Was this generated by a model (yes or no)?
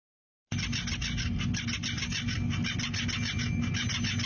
no